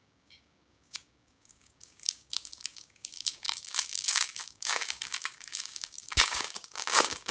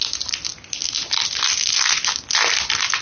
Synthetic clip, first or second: first